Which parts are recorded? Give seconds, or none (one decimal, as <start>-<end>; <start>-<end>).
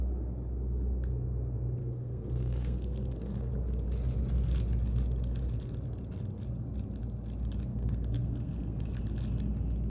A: 0.0-1.8; 3.5-7.7; 9.0-9.9